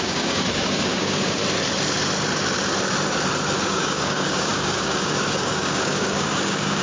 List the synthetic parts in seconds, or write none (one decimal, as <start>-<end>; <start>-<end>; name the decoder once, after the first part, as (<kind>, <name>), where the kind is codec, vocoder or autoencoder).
0.0-1.4 (codec, DAC); 3.6-6.8

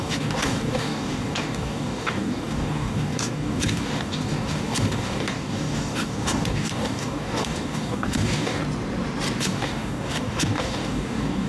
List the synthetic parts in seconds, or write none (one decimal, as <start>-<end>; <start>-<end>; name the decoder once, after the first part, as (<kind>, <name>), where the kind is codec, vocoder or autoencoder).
0.0-8.6 (codec, DAC); 9.4-11.5

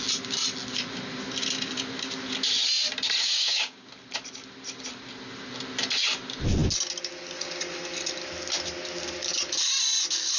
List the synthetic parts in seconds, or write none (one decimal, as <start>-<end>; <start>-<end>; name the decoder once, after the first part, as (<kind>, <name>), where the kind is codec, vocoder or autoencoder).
3.2-3.9 (codec, DAC)

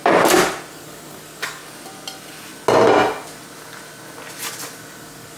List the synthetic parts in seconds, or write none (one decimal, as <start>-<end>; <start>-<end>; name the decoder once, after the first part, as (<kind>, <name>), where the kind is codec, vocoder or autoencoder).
0.7-1.6 (codec, DAC); 4.8-5.4

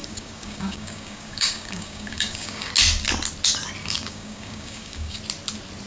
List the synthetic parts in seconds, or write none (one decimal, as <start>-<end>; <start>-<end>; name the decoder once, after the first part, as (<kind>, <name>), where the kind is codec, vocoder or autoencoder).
0.0-2.7 (codec, DAC); 3.8-5.2

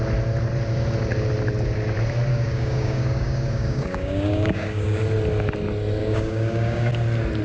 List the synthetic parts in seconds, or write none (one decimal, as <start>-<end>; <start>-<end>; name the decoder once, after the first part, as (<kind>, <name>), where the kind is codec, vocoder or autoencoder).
2.3-5.0 (codec, DAC); 6.0-6.9

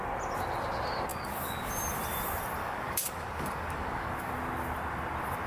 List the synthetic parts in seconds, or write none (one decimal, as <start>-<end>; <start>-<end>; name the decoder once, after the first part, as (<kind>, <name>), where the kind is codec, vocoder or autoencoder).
1.1-1.7 (codec, DAC); 2.6-4.3